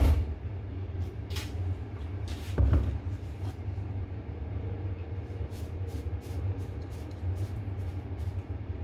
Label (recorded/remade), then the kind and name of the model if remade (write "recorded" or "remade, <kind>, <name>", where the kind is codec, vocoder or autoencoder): remade, vocoder, BigVGAN v2